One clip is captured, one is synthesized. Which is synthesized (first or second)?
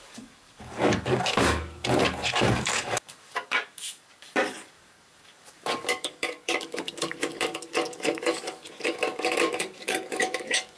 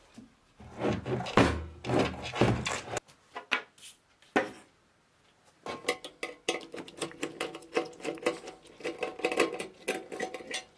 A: first